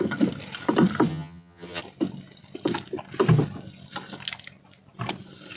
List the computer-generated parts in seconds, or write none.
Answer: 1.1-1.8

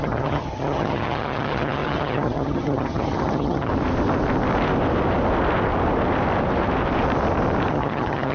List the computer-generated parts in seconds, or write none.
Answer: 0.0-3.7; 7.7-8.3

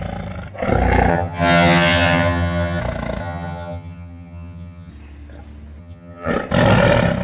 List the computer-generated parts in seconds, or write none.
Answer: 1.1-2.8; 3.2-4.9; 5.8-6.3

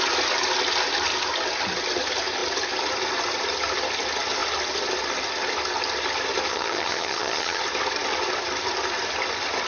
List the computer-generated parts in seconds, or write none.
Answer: 6.5-7.6

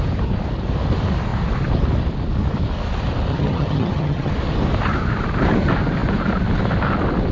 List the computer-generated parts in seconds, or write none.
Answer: 3.3-4.3

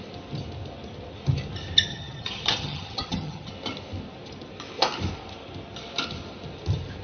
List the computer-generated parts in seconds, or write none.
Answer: 1.9-3.5

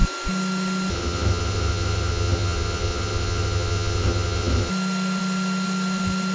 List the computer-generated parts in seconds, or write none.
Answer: 0.9-4.7